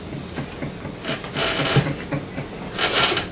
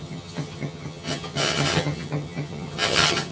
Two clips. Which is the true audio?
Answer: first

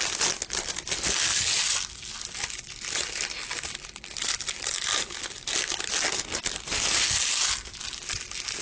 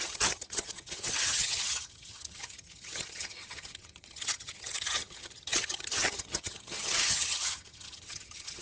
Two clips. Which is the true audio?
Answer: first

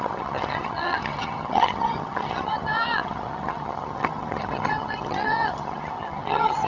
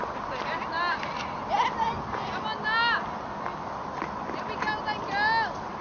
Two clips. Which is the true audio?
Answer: second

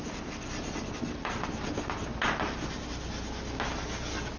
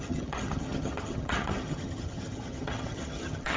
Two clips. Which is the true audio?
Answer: first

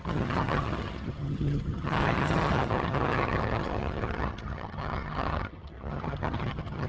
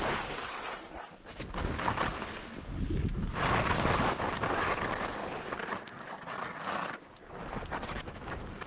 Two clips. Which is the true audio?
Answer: second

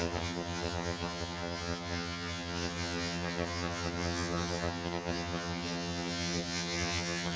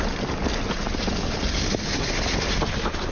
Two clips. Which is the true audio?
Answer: second